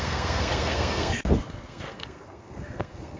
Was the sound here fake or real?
fake